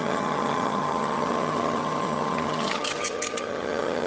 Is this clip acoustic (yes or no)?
no